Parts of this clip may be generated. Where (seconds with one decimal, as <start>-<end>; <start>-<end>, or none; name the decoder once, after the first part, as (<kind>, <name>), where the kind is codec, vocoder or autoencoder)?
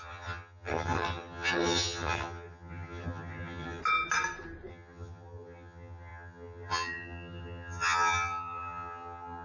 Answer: 0.0-3.8 (vocoder, HiFi-GAN); 4.7-9.4